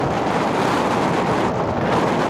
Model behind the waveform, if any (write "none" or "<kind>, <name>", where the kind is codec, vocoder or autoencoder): none